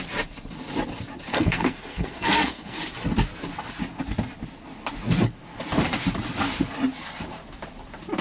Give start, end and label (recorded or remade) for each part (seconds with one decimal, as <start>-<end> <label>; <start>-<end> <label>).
0.0-1.3 recorded; 1.3-2.8 remade; 2.8-8.2 recorded